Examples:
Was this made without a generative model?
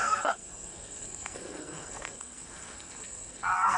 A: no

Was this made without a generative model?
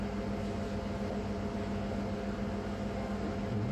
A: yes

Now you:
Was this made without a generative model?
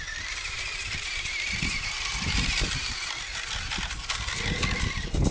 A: yes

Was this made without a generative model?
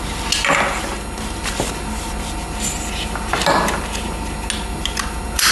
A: yes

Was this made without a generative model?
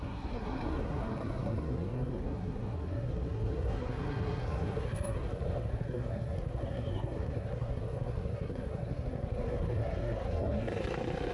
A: no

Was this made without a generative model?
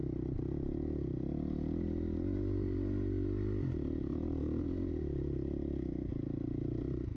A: yes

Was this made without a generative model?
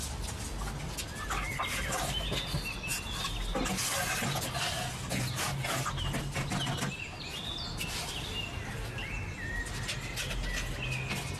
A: yes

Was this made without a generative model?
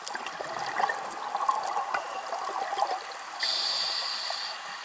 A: yes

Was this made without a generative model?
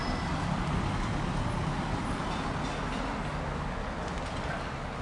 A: yes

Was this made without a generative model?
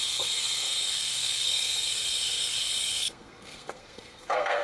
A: no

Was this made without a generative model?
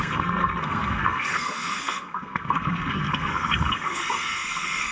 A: no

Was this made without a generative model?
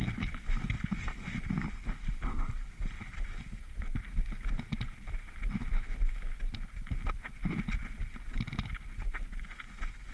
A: yes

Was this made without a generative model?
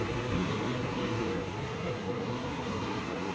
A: no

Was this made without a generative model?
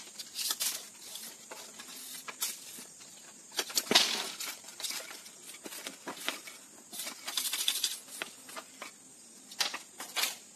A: yes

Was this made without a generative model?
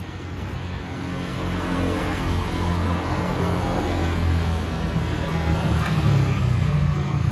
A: no